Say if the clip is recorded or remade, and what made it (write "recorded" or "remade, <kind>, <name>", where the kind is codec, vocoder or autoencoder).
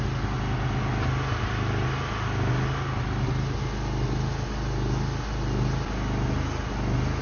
recorded